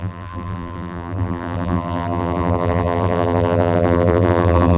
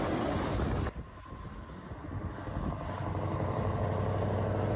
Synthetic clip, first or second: first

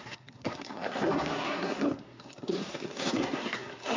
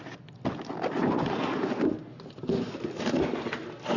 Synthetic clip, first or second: first